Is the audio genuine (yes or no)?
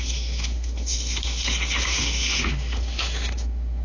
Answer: no